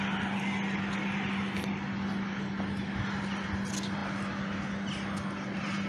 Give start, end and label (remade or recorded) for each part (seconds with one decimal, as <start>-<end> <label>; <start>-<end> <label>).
0.0-5.9 recorded